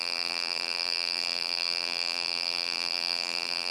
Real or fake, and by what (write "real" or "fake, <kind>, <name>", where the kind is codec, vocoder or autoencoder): fake, vocoder, BigVGAN v2